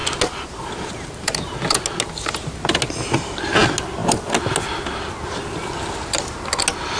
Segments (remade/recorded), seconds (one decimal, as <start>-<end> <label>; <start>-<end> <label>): 0.0-7.0 recorded